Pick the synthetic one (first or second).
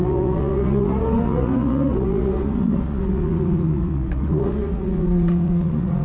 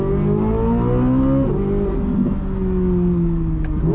first